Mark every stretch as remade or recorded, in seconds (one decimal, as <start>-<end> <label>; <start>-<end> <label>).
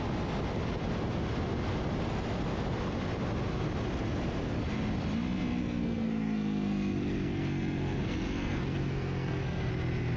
0.0-5.6 recorded; 5.6-9.7 remade; 9.7-10.2 recorded